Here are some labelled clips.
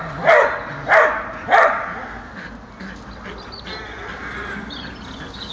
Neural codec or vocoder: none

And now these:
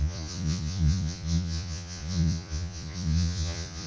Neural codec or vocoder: vocoder, Vocos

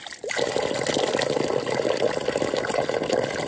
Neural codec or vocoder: none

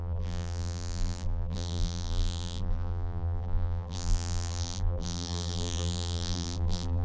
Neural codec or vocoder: vocoder, BigVGAN v2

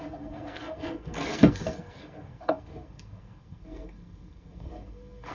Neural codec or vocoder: codec, SNAC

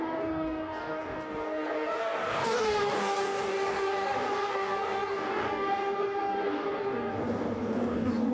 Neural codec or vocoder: codec, DAC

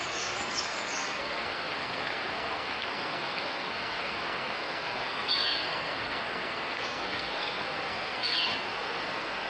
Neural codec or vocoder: codec, SNAC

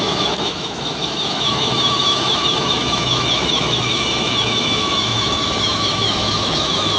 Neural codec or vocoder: autoencoder, DAC-VAE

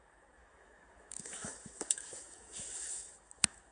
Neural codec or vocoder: autoencoder, DAC-VAE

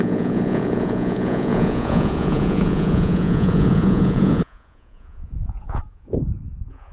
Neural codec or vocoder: vocoder, Vocos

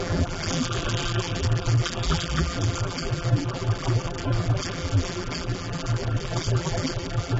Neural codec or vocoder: vocoder, BigVGAN v2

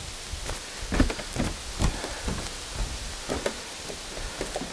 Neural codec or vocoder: none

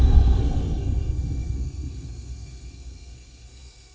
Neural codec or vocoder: codec, SNAC